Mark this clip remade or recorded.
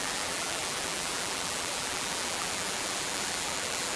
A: remade